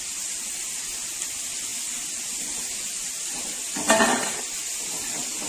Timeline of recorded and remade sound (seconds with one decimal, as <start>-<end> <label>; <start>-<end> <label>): 0.0-5.5 recorded